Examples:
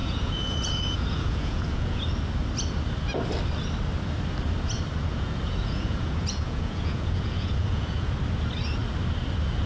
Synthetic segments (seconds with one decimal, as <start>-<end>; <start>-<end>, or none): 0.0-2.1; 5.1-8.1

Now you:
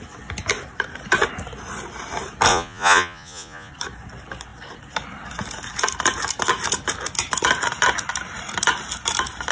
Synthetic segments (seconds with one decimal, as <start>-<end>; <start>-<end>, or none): 2.5-3.7

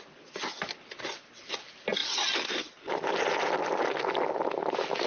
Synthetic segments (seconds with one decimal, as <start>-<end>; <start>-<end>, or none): none

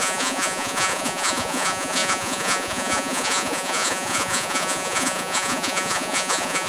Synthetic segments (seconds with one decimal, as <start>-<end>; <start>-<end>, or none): 0.0-6.7

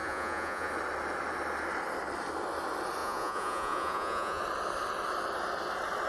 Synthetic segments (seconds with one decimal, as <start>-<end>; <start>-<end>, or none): 0.0-0.7; 3.0-4.4

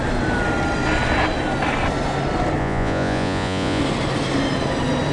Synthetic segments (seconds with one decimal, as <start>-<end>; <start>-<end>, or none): 2.6-3.8

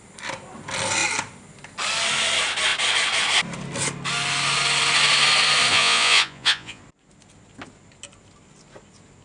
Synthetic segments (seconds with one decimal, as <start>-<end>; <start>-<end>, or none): 5.7-6.8